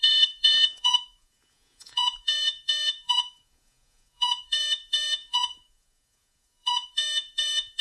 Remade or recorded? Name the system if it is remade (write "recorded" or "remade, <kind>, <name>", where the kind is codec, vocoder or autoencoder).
remade, vocoder, Vocos